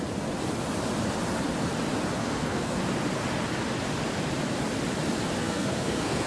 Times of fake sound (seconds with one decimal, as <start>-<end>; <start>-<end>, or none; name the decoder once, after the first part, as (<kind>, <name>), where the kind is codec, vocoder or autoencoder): 2.2-2.8 (codec, SNAC); 5.4-6.3